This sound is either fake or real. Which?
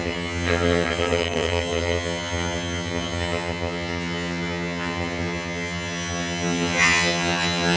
fake